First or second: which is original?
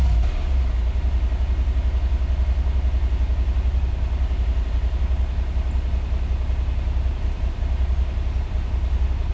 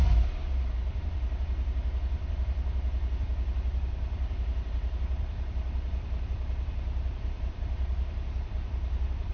first